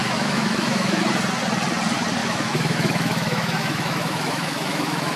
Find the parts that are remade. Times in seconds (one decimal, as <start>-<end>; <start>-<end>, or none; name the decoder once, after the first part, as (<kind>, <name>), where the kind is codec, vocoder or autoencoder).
0.0-1.0 (autoencoder, DAC-VAE); 2.2-5.2